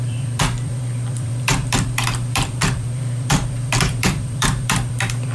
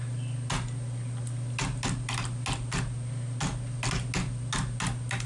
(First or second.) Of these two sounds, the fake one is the first